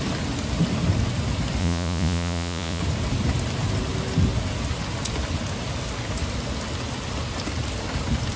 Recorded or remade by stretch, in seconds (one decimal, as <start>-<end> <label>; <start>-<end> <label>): 0.0-1.6 recorded; 1.6-2.8 remade; 2.8-8.4 recorded